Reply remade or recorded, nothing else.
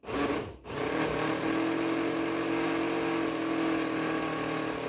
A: recorded